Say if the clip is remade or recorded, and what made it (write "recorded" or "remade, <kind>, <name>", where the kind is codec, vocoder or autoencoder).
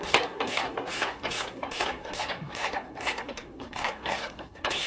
remade, codec, SNAC